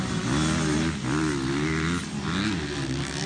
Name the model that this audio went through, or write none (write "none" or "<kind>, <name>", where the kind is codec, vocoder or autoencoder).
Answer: none